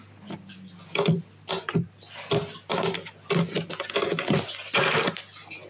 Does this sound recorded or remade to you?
recorded